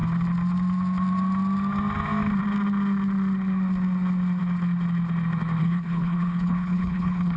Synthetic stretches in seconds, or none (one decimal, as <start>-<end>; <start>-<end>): 5.6-7.4